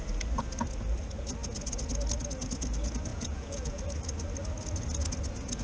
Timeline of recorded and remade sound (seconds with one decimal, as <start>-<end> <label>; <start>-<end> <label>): 0.0-3.1 recorded; 3.1-3.8 remade; 3.8-5.6 recorded